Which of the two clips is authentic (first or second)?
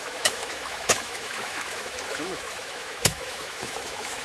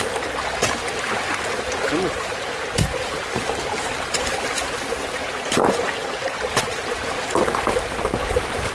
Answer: second